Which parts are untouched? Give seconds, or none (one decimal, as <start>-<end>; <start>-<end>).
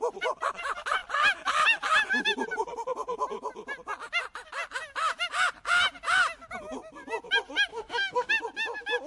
0.0-7.7; 8.3-9.1